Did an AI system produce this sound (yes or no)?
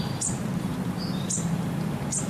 no